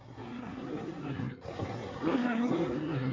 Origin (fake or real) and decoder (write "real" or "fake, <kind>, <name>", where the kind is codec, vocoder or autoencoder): fake, codec, SNAC